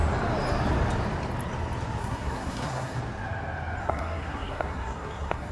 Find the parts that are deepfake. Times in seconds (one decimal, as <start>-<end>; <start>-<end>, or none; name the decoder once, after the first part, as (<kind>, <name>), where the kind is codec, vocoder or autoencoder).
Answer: 2.0-3.0 (codec, SNAC); 3.8-5.5